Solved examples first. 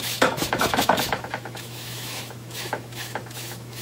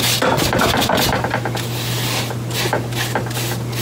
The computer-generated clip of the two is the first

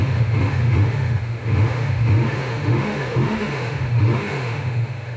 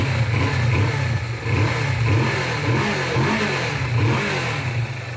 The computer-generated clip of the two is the first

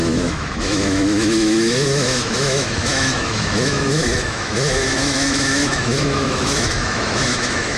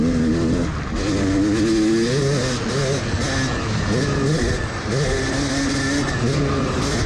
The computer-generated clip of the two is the first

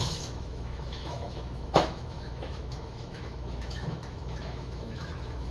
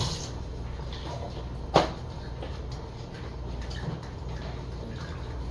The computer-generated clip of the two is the first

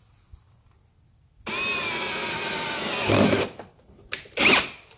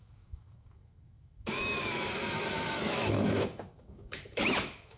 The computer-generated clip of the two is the second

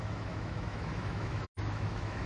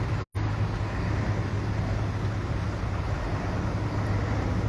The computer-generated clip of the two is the first